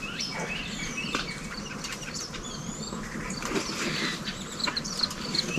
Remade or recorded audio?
remade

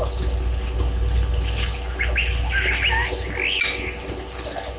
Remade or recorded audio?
recorded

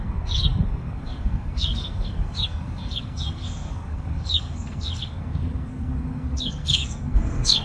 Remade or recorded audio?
remade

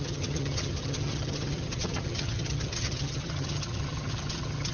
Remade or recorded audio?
remade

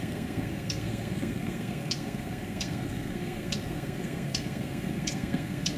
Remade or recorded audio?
remade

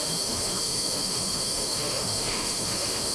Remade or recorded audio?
remade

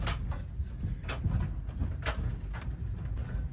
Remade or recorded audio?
recorded